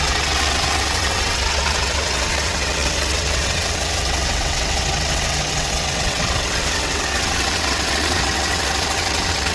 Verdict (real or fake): fake